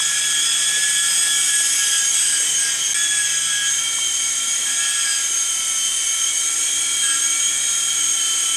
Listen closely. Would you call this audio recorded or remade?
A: recorded